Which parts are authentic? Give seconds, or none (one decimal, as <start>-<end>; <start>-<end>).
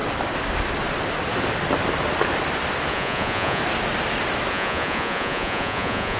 0.0-2.9; 3.6-4.5